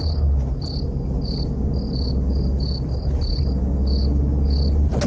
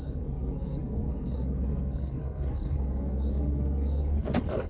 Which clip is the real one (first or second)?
first